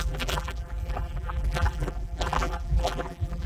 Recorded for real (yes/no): no